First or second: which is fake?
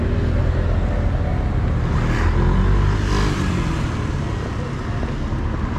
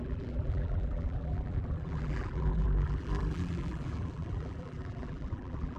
second